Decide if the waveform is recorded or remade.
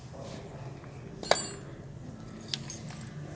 recorded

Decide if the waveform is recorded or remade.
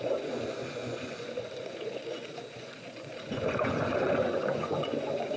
remade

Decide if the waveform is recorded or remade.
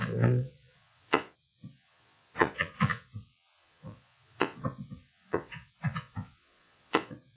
remade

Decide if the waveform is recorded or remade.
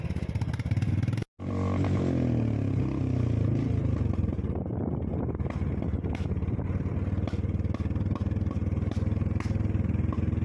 recorded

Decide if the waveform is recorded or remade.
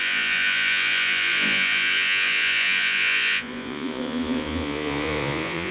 remade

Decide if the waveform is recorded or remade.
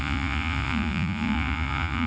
remade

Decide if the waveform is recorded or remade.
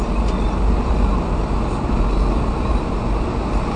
recorded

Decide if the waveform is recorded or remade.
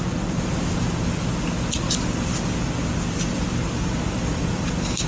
recorded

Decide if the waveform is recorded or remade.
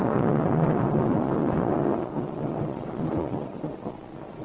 remade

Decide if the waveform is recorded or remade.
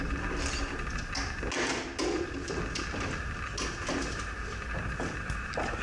recorded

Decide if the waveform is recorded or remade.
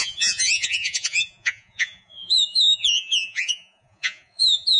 remade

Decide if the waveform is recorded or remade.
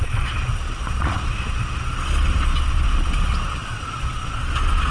remade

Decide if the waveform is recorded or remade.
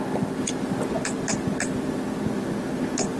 recorded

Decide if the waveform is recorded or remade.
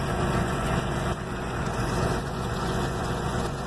remade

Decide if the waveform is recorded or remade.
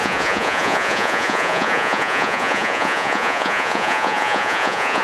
remade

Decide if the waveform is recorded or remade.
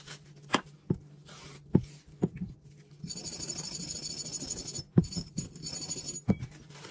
recorded